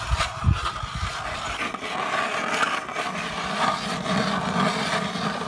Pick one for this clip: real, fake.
real